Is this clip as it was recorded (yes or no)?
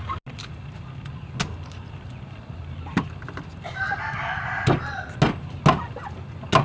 yes